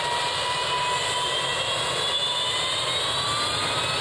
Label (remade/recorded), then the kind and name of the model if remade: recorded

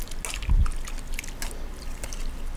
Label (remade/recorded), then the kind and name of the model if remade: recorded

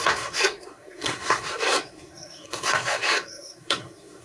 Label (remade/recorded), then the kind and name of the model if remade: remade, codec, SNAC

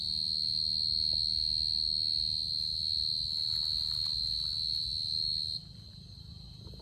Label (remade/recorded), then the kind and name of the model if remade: recorded